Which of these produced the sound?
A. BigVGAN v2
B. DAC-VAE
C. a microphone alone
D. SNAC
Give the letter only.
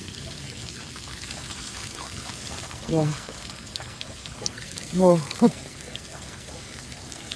D